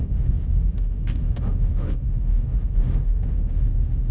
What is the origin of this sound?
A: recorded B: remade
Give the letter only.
B